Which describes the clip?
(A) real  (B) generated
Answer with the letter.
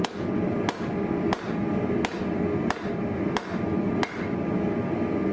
A